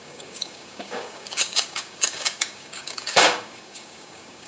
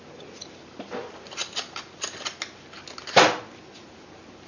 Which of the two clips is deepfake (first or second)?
first